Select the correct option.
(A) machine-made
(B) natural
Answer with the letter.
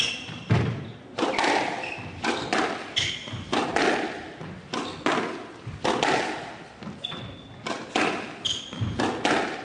B